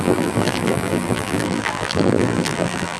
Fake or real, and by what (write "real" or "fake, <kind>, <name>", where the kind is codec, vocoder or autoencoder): fake, vocoder, BigVGAN v2